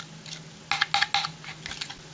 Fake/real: real